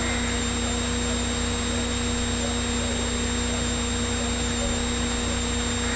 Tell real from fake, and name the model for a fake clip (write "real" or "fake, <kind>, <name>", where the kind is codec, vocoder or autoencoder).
real